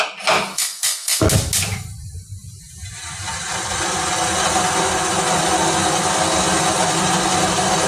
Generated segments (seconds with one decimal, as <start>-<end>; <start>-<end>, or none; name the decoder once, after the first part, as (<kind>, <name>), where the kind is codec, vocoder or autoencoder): 0.5-1.2 (codec, SNAC)